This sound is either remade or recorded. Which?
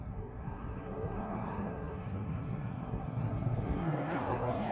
remade